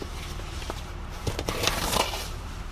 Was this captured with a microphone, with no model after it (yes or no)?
no